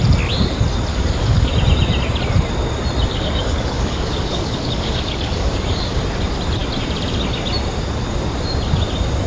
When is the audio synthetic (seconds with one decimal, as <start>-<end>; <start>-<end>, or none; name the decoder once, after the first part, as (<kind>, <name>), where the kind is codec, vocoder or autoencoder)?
0.9-1.5 (codec, DAC); 3.1-6.0